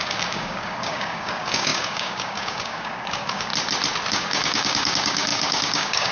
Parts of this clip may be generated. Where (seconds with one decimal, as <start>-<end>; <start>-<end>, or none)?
0.0-3.5; 4.1-6.1